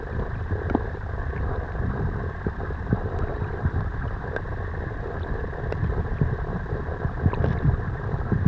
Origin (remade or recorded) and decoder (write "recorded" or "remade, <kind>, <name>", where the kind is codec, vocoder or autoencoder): recorded